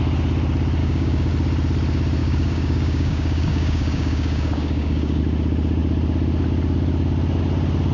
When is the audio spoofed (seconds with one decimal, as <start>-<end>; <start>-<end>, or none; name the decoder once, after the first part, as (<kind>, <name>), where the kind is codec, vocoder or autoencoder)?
0.8-1.3 (codec, DAC); 2.2-5.2

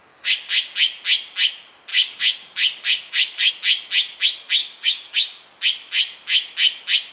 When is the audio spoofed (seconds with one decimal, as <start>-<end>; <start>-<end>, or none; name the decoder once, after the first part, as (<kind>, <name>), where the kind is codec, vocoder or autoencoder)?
0.0-0.8 (codec, DAC); 1.9-3.5; 4.6-5.4

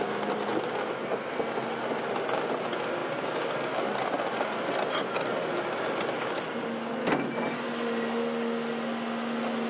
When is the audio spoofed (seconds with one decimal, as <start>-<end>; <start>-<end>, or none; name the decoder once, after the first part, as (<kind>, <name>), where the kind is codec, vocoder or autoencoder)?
none